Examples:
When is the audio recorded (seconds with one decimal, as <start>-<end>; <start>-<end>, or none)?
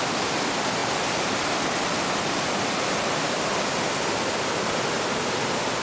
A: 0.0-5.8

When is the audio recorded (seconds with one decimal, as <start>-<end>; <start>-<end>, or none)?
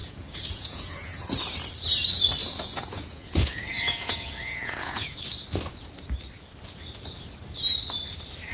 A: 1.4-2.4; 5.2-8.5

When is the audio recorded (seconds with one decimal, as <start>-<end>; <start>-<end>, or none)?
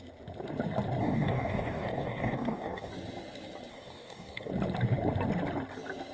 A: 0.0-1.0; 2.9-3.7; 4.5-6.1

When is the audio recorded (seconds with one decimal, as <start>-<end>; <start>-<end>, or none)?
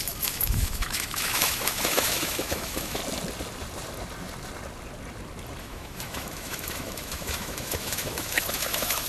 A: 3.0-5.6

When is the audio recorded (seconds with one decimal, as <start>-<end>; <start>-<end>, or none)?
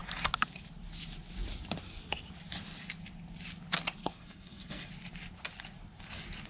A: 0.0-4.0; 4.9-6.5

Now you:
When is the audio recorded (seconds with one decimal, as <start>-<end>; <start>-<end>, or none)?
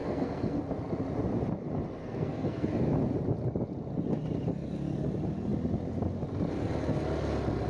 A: 0.6-2.0; 2.7-7.7